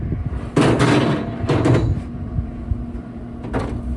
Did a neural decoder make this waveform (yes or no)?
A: no